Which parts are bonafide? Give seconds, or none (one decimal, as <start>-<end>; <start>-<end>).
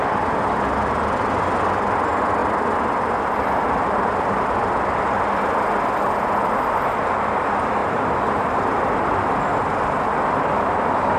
0.0-11.2